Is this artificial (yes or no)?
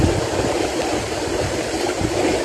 no